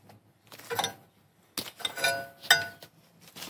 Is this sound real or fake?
real